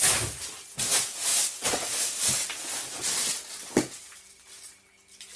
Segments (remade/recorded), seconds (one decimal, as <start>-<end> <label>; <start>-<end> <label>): 0.0-5.4 recorded